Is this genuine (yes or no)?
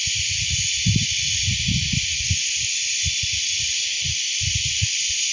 yes